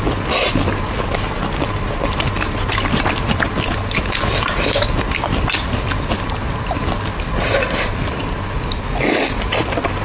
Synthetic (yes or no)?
yes